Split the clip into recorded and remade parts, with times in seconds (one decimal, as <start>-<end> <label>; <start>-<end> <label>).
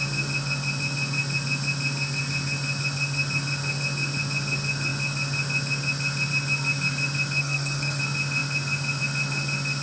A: 0.0-7.4 recorded; 7.4-8.0 remade; 8.0-9.8 recorded